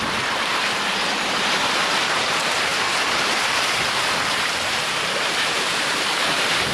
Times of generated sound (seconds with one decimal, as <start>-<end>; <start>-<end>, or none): 0.0-6.7